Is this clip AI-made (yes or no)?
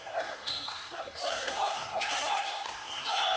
yes